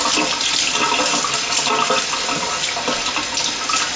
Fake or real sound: real